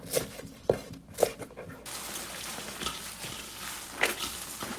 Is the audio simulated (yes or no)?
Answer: no